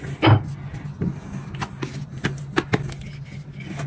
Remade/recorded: recorded